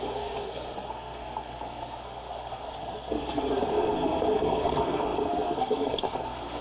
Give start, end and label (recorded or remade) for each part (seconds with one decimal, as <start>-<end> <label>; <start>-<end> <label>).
0.0-6.6 remade